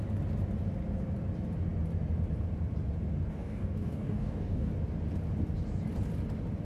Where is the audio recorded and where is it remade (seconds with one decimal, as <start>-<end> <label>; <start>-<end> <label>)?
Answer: 0.0-3.3 recorded; 3.3-4.7 remade; 4.7-6.6 recorded